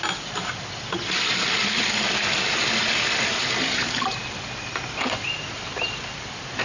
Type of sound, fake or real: real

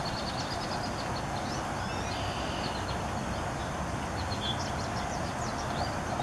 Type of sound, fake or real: real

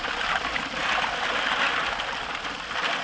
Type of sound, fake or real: real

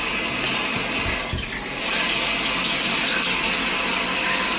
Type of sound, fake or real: real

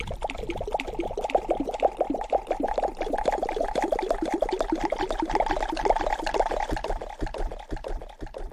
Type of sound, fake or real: real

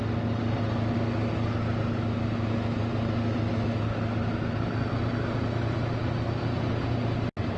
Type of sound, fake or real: real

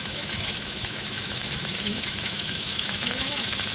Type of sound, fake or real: fake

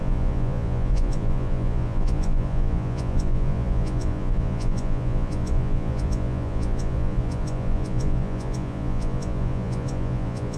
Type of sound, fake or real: fake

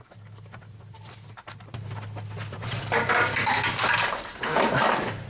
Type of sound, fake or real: real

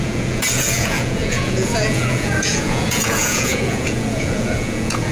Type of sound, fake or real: fake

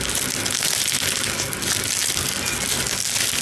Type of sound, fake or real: real